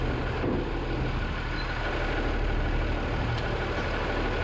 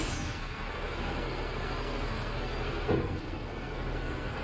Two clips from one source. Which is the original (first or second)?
first